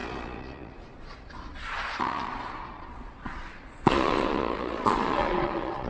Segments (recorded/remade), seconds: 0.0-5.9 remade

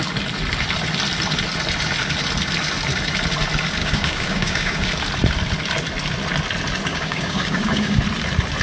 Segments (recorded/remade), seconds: 0.0-3.8 recorded; 3.8-4.9 remade; 4.9-6.9 recorded; 6.9-8.0 remade; 8.0-8.6 recorded

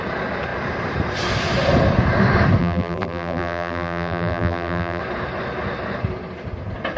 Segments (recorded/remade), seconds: 0.0-2.6 recorded; 2.6-5.0 remade; 5.0-7.0 recorded

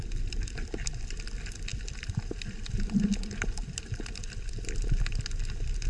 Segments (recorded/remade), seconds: 0.0-5.9 recorded

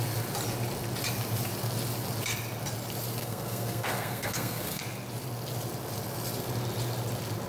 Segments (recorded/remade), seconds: 0.0-3.2 recorded; 3.2-4.8 remade; 4.8-7.5 recorded